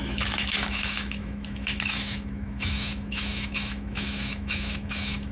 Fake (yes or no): yes